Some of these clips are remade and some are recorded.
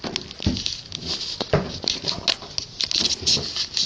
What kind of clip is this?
recorded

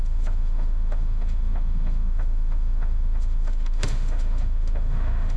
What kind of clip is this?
remade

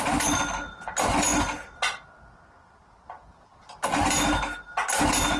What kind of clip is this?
recorded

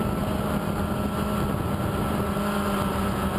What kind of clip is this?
recorded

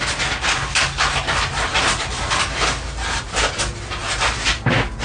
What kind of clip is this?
recorded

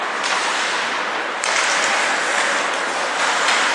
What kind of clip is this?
recorded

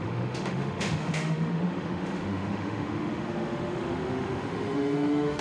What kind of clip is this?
remade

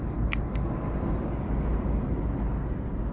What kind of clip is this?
recorded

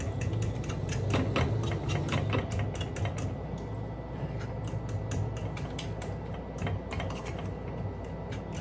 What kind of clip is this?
recorded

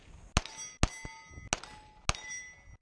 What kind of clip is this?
recorded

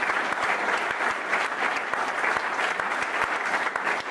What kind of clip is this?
recorded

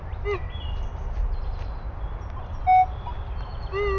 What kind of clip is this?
recorded